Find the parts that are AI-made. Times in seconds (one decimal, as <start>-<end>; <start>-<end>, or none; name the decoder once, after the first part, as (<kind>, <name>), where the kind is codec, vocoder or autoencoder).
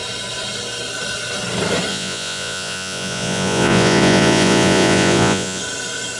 1.9-5.6 (vocoder, Vocos)